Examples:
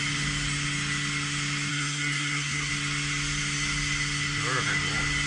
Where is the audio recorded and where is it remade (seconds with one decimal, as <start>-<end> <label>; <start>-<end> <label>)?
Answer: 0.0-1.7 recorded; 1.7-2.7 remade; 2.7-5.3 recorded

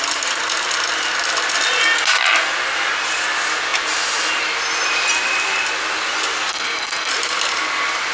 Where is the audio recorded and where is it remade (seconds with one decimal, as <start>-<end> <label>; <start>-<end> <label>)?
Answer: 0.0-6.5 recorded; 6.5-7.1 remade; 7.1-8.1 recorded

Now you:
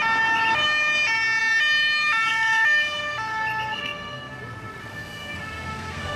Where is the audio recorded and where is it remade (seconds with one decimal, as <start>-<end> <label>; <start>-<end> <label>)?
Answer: 0.0-3.7 recorded; 3.7-4.4 remade; 4.4-4.9 recorded; 4.9-6.2 remade